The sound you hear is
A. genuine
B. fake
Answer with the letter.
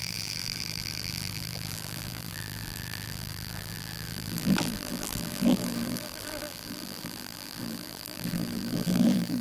B